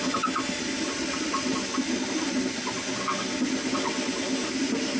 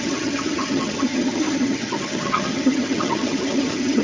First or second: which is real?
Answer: first